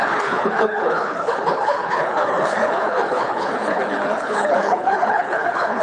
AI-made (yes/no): yes